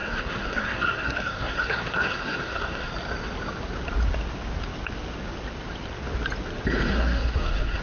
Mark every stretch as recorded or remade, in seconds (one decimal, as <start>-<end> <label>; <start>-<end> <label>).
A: 0.0-2.9 remade; 2.9-6.9 recorded; 6.9-7.8 remade